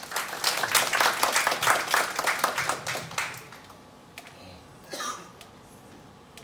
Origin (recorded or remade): recorded